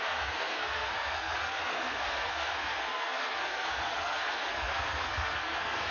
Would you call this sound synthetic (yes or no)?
yes